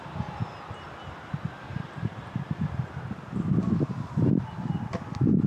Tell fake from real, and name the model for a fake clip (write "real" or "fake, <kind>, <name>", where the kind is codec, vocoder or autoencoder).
real